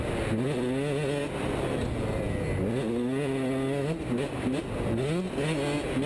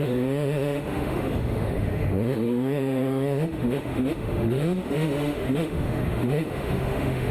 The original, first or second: first